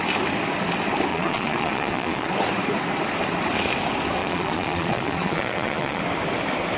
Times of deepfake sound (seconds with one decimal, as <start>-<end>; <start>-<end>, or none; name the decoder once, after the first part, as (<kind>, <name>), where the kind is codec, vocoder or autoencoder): 1.1-2.3 (vocoder, Vocos); 4.2-6.0